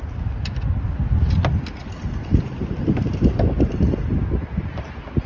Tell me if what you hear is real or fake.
real